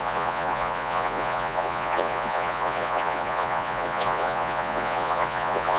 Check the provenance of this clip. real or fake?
fake